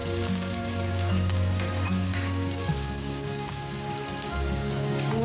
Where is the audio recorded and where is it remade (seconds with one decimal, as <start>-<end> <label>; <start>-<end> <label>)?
0.0-5.2 remade